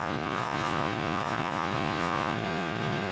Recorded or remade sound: remade